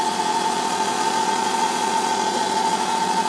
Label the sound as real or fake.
fake